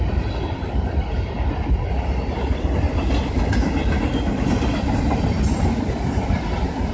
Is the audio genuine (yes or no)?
yes